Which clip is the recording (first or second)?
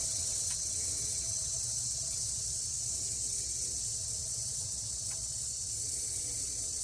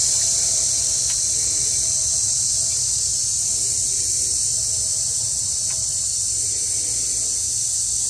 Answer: second